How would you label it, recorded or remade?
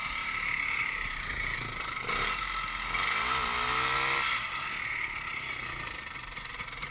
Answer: recorded